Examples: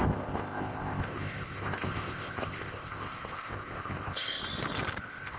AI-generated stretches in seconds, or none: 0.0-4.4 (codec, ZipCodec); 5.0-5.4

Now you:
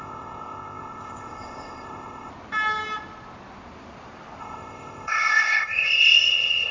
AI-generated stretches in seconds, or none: 0.0-2.3 (codec, ZipCodec); 4.4-6.7

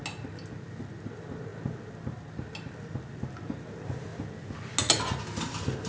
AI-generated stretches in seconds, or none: none

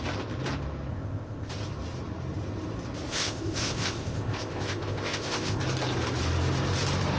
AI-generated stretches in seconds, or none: 0.9-1.5 (codec, ZipCodec); 3.1-5.6

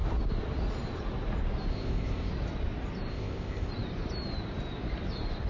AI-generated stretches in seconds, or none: 1.7-2.3 (codec, ZipCodec); 3.1-3.7

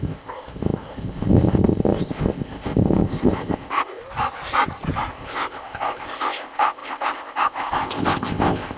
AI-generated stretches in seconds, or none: 0.0-4.0 (codec, ZipCodec); 5.1-8.8

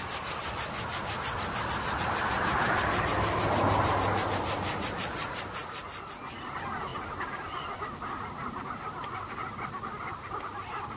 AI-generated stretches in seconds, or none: none

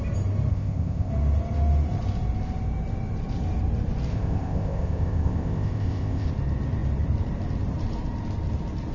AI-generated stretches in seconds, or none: 0.5-1.1 (codec, ZipCodec); 4.1-6.3